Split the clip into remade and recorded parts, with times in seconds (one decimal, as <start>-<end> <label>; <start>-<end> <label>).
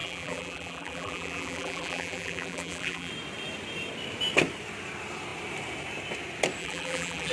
0.0-3.1 remade; 3.1-6.6 recorded; 6.6-7.3 remade